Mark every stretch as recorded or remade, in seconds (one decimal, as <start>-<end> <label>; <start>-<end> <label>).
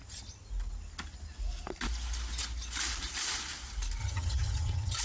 0.0-4.0 recorded; 4.0-5.0 remade